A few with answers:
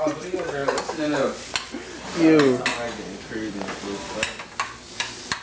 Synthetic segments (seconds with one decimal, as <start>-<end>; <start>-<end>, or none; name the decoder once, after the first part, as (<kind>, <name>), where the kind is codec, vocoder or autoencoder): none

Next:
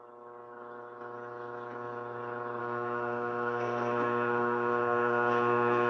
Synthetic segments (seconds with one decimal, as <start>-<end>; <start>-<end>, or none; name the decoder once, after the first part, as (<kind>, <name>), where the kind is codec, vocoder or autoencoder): 2.6-5.9 (codec, SNAC)

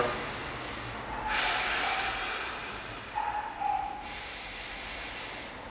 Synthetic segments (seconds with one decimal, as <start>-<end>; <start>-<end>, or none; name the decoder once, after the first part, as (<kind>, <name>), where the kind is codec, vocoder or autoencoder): none

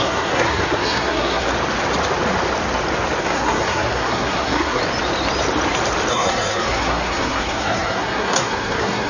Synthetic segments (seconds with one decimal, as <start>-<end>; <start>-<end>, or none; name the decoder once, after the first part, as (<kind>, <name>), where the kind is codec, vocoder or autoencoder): 0.0-1.5 (codec, SNAC); 3.2-4.8; 6.1-9.1

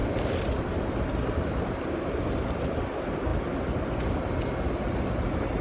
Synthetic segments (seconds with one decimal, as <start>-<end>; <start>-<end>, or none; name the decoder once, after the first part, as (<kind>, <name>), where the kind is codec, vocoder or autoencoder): none